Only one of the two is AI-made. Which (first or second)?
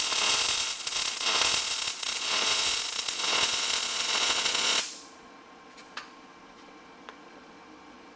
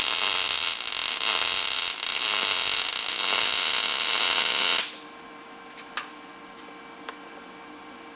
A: first